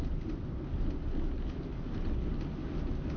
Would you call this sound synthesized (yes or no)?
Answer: no